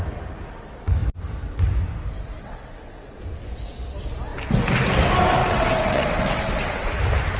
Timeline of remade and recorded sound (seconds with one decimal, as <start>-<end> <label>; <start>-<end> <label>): 0.0-2.4 recorded; 2.4-3.2 remade; 3.2-5.4 recorded; 5.4-7.0 remade; 7.0-7.4 recorded